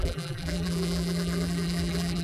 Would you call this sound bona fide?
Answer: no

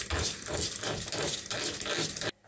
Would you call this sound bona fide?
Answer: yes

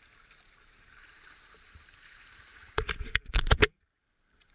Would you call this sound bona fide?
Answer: no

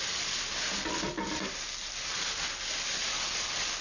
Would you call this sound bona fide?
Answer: yes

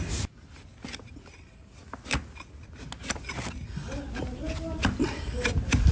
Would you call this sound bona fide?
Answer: yes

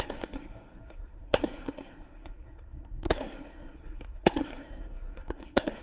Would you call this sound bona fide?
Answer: no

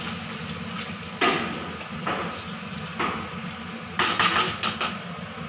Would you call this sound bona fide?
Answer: yes